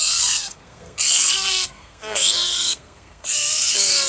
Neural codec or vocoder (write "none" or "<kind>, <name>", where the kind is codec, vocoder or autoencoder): codec, SNAC